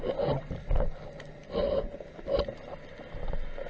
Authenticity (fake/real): real